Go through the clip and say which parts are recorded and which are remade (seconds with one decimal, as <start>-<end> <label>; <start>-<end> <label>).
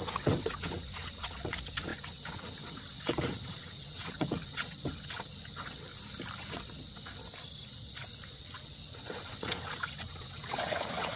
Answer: 0.0-5.9 remade; 5.9-6.4 recorded; 6.4-7.2 remade; 7.2-8.3 recorded; 8.3-11.2 remade